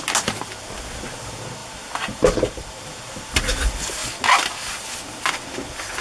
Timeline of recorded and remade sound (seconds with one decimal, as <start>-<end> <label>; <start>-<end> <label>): 0.0-1.6 recorded; 1.6-3.4 remade; 3.4-6.0 recorded